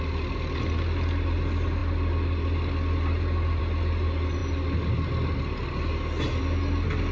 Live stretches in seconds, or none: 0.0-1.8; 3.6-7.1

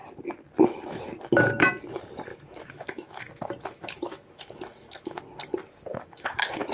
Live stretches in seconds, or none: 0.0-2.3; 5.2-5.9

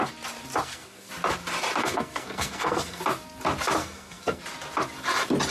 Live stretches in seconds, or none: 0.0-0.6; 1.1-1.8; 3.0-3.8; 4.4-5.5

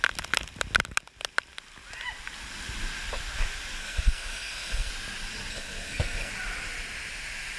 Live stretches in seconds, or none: 0.0-3.8; 4.9-5.5; 6.3-7.6

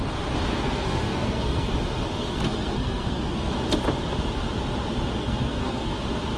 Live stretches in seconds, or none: 0.0-0.5; 1.7-2.1; 3.5-5.2; 5.9-6.4